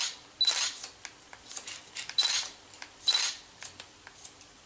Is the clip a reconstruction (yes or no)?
no